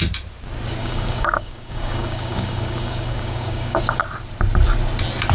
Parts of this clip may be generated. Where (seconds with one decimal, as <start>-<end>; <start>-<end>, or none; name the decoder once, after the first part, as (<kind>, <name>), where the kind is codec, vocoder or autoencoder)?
0.8-4.0 (codec, DAC)